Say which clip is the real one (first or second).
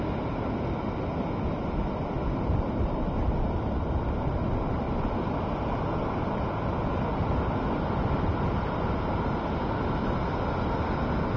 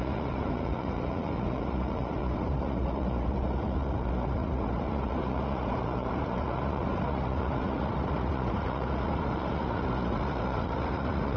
first